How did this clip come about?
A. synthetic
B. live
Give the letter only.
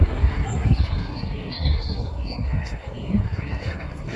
A